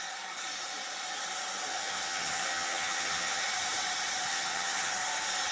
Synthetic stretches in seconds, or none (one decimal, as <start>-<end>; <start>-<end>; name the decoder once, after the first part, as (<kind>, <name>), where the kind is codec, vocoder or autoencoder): 1.7-3.4 (vocoder, HiFi-GAN); 4.3-4.9